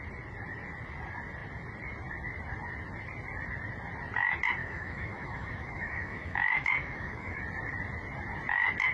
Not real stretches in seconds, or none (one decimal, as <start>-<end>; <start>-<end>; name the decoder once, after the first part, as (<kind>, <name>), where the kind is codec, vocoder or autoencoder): 4.6-7.4 (autoencoder, DAC-VAE)